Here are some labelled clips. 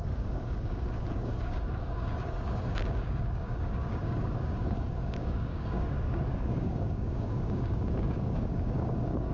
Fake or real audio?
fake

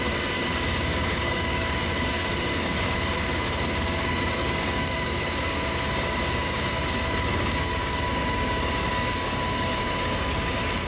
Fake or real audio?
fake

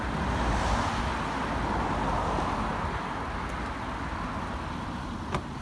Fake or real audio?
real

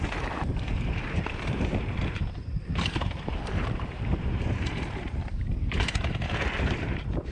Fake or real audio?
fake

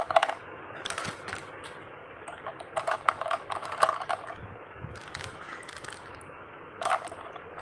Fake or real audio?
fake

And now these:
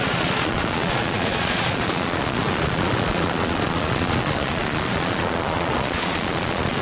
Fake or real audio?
fake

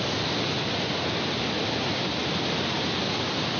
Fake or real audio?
real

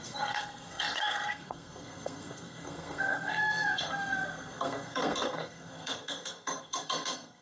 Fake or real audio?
fake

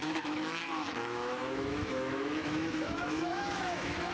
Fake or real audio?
fake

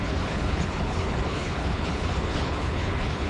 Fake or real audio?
fake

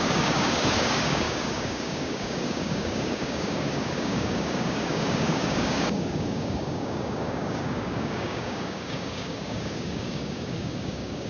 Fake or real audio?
fake